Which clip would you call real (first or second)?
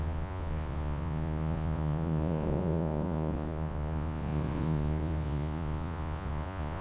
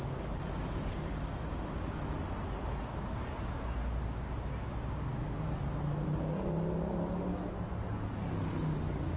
second